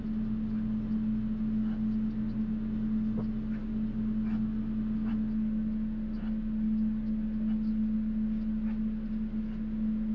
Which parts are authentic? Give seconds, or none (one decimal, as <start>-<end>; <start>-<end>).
0.0-10.1